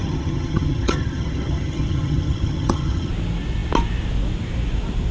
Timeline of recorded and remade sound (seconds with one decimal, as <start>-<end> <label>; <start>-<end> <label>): 0.0-3.1 remade; 3.1-5.1 recorded